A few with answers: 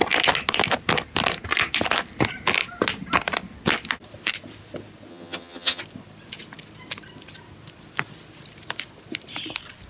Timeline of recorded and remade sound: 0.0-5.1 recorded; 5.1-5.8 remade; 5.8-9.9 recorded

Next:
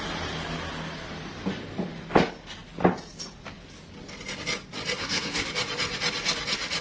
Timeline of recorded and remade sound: 0.0-5.0 recorded; 5.0-5.5 remade; 5.5-6.8 recorded

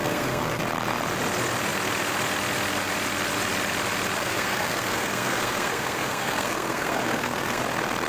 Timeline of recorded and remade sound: 0.0-0.6 remade; 0.6-4.2 recorded; 4.2-7.6 remade; 7.6-8.1 recorded

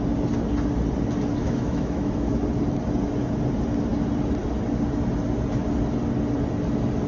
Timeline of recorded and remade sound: 0.0-1.4 recorded; 1.4-2.3 remade; 2.3-7.1 recorded

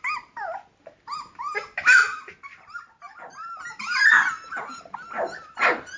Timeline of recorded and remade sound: 0.0-6.0 recorded